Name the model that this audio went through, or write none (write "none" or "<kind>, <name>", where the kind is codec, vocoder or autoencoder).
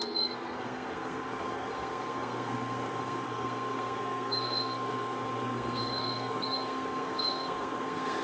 codec, SNAC